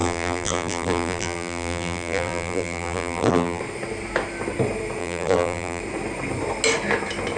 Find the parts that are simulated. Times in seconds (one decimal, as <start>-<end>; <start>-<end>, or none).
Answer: 0.0-3.6; 5.0-5.8